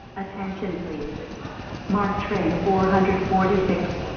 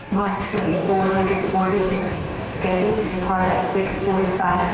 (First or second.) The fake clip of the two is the second